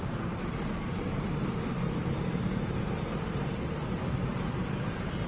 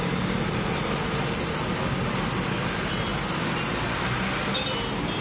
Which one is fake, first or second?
first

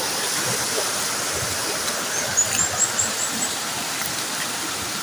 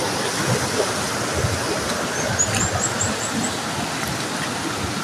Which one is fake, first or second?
first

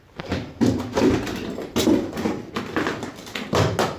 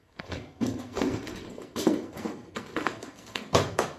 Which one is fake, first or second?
second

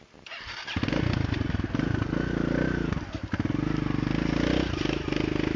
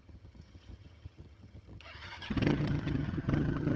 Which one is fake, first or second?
second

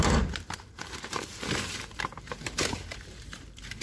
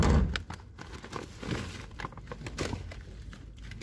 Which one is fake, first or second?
first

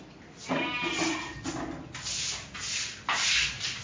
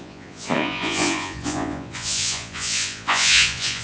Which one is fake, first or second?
second